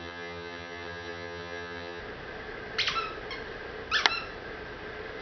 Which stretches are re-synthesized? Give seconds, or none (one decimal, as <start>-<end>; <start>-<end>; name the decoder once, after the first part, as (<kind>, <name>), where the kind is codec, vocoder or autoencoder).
0.0-2.0 (vocoder, HiFi-GAN)